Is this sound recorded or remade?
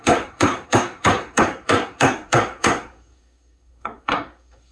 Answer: remade